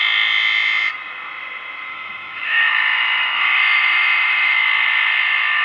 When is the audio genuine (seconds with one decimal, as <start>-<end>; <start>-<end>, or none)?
0.0-1.9